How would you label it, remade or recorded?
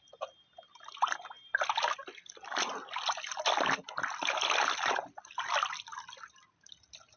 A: recorded